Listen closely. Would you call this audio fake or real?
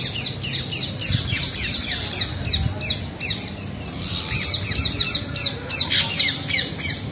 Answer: real